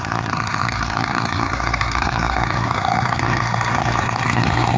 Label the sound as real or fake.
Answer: fake